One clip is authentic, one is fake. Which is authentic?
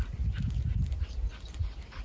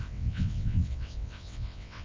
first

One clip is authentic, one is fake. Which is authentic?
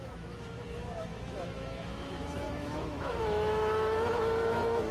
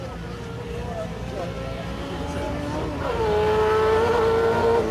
second